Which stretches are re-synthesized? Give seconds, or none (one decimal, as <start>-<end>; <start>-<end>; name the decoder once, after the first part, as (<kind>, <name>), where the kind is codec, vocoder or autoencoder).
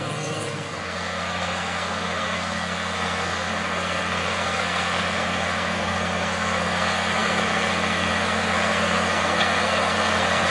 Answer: 0.0-10.5 (codec, SNAC)